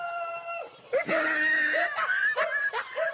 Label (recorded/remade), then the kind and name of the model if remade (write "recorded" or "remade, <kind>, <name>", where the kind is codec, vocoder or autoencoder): recorded